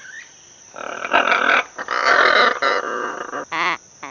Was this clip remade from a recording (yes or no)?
no